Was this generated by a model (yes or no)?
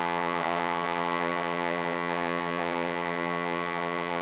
yes